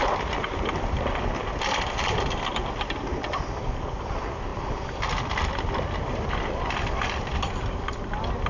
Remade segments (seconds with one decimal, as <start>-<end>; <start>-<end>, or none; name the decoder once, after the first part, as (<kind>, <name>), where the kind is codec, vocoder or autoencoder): none